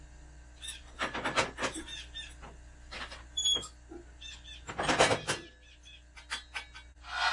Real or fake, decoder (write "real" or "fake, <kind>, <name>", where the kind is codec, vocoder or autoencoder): real